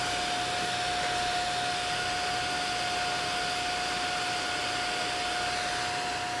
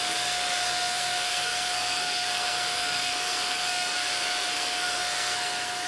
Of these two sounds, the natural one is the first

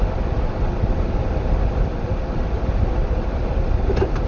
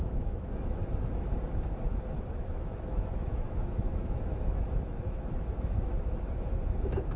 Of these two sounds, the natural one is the first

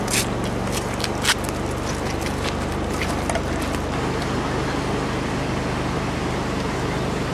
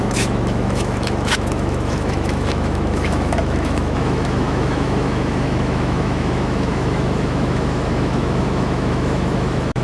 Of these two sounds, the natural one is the first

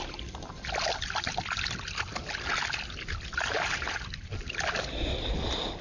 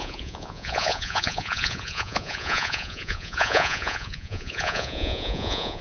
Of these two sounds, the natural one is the first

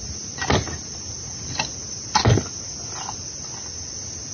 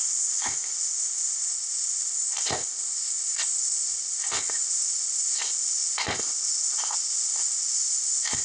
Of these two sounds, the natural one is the first